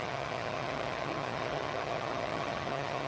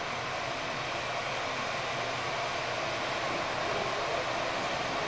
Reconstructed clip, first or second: first